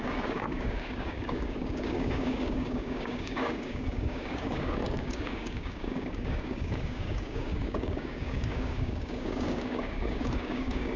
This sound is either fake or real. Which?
fake